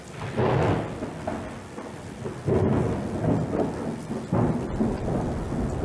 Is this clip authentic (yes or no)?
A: yes